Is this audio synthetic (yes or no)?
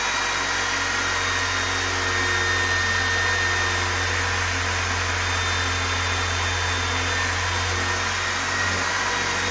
no